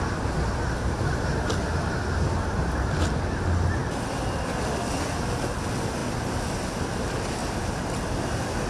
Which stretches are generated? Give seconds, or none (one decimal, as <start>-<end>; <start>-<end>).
3.8-4.4; 7.4-8.7